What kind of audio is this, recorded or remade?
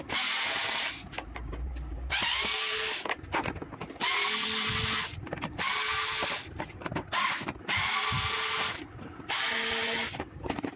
recorded